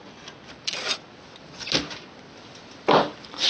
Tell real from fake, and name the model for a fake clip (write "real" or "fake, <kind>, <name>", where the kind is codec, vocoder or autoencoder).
real